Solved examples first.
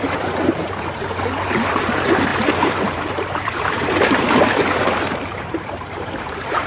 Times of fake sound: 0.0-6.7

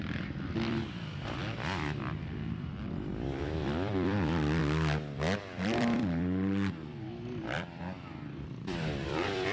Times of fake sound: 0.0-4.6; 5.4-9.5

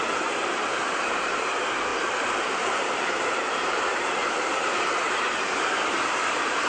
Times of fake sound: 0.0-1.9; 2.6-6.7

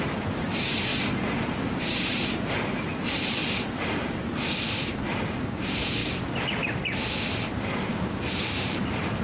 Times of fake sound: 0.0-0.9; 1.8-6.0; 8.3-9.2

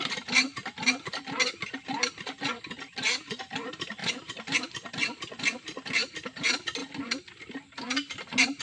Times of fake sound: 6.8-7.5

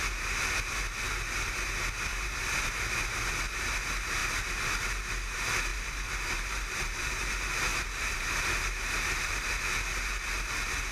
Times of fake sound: 2.1-2.8; 5.7-7.3; 7.7-9.5

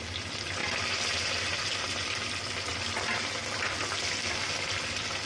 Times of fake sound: none

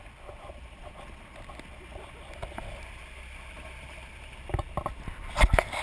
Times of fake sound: none